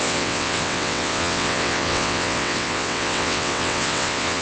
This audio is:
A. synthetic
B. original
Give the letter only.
A